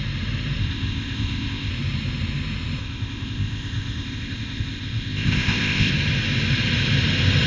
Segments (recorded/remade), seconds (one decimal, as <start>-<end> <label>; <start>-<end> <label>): 0.0-0.6 recorded; 0.6-1.7 remade; 1.7-2.8 recorded; 2.8-5.9 remade; 5.9-7.5 recorded